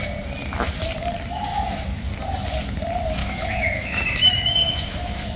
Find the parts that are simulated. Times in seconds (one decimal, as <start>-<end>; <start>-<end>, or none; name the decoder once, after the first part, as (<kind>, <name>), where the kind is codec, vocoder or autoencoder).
1.5-2.0 (autoencoder, DAC-VAE); 3.2-5.4